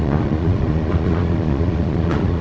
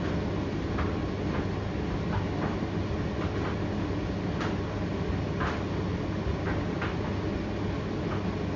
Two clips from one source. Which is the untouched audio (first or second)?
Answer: second